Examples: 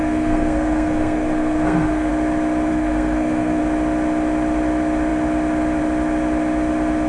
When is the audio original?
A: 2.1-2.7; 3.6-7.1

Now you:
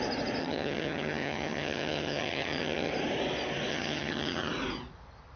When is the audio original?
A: 0.0-0.4; 2.9-3.7; 4.5-5.4

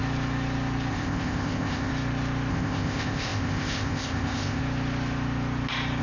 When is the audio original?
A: 0.0-0.9; 1.9-2.5; 4.6-6.0

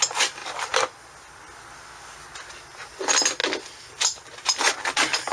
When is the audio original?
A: 0.0-5.3

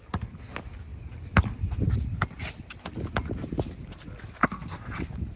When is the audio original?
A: 0.0-4.4; 4.9-5.4

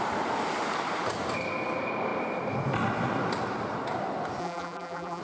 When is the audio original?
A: 0.0-4.4